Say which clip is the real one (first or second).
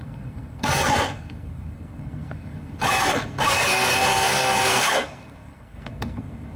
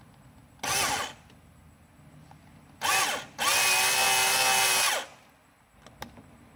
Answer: second